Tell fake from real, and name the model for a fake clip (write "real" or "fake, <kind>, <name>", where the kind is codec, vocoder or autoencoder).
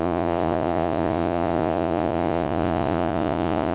fake, vocoder, Vocos